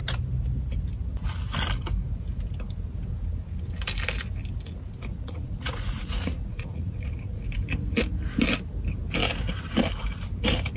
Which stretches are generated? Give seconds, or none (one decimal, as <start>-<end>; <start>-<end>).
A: 5.1-7.4